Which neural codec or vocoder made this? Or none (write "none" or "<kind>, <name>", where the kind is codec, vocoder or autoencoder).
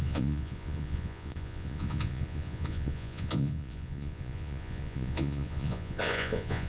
vocoder, Vocos